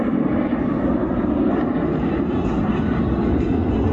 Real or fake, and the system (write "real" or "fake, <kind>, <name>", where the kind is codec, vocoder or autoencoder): real